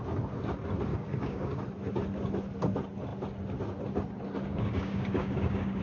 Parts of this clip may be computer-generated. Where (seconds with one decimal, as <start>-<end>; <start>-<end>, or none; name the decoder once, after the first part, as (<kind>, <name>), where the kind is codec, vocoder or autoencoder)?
0.9-1.6 (codec, DAC); 4.5-5.8